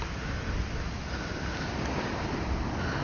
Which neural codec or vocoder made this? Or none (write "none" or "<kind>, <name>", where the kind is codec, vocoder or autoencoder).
none